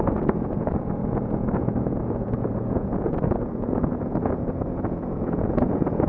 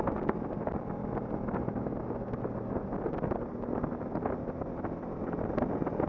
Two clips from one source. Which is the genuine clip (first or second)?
second